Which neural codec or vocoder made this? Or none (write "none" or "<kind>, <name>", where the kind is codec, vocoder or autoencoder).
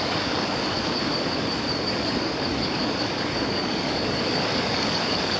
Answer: codec, DAC